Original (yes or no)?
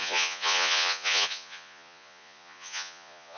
no